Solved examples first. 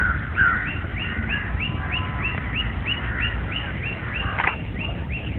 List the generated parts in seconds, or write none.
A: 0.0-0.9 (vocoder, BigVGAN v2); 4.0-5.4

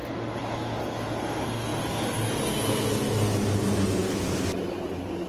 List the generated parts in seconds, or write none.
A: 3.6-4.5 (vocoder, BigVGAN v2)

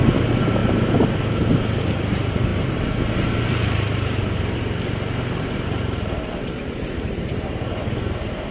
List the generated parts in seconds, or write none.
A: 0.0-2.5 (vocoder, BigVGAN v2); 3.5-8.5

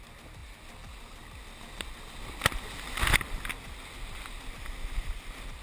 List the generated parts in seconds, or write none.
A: none

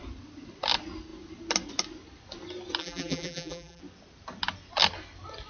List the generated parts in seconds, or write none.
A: 2.8-3.8 (vocoder, BigVGAN v2)

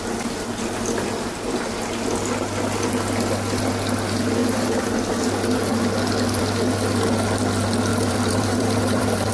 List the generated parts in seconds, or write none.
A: 4.4-5.0 (vocoder, BigVGAN v2); 7.9-9.3